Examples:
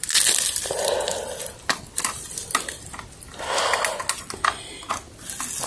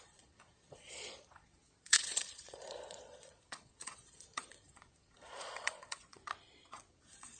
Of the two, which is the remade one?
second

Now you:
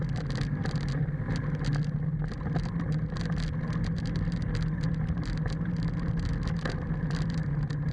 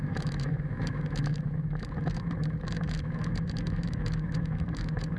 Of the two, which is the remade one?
second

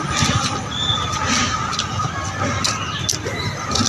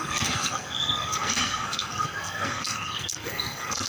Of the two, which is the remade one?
second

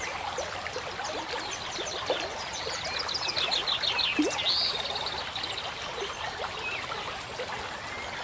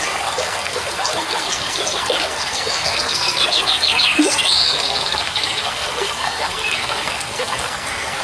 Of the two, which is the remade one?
second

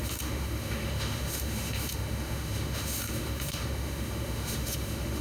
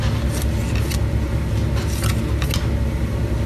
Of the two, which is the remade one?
first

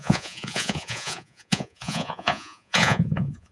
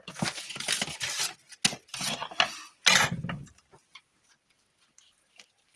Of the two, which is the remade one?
first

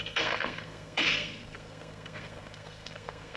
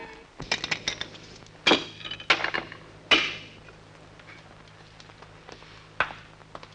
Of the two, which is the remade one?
first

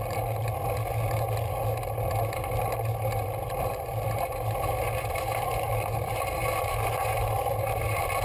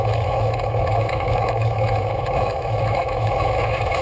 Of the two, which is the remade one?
second